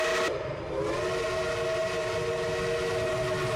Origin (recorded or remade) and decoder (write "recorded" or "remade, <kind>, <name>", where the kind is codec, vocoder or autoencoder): recorded